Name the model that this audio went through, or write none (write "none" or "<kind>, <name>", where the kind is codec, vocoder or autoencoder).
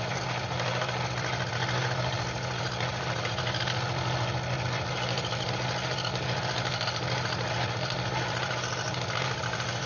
none